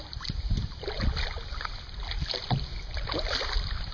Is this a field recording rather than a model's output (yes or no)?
yes